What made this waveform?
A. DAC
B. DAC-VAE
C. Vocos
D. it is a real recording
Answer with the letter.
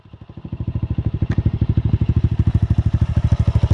D